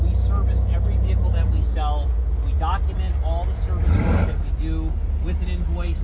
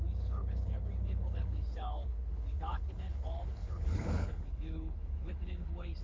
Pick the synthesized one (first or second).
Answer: second